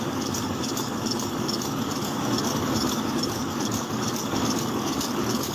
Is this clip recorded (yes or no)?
no